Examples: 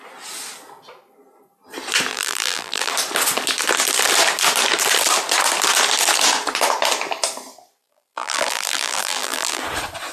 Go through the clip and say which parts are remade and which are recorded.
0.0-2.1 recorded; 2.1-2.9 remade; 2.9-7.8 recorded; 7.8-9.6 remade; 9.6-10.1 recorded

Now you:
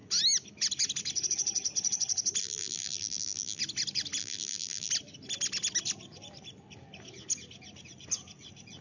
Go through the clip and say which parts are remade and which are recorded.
0.0-2.4 recorded; 2.4-3.6 remade; 3.6-4.2 recorded; 4.2-4.9 remade; 4.9-8.8 recorded

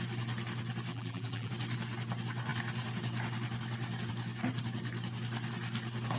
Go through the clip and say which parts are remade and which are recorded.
0.0-0.9 recorded; 0.9-1.5 remade; 1.5-6.2 recorded

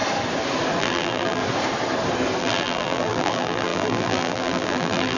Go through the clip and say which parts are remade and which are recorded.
0.0-0.8 recorded; 0.8-1.4 remade; 1.4-2.4 recorded; 2.4-5.2 remade